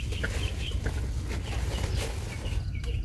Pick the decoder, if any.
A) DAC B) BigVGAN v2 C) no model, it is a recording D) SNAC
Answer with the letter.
C